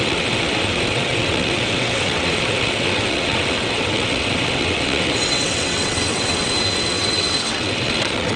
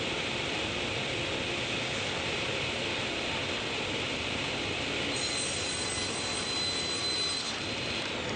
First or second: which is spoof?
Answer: first